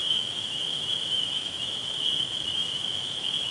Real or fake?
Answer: fake